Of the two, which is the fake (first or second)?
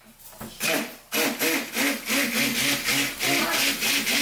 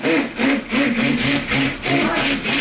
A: second